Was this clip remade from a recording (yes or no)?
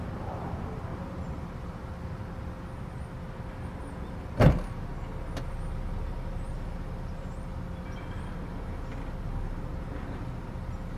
no